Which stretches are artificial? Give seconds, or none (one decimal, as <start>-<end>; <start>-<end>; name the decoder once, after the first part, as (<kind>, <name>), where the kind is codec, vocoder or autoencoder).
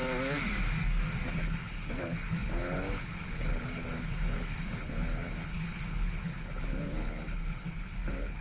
1.3-8.4 (codec, HILCodec)